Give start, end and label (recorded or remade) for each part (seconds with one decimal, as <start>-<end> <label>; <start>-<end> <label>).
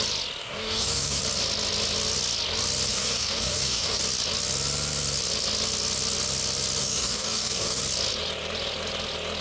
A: 0.0-0.4 recorded; 0.4-1.2 remade; 1.2-2.9 recorded; 2.9-4.0 remade; 4.0-6.8 recorded; 6.8-7.8 remade; 7.8-9.4 recorded